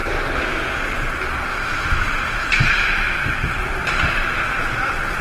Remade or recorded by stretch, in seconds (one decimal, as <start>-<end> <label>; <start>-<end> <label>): 0.0-1.5 recorded; 1.5-3.5 remade; 3.5-5.2 recorded